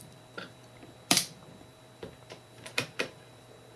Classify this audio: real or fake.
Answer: fake